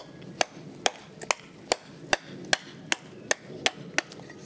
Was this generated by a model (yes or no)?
no